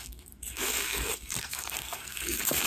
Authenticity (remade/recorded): remade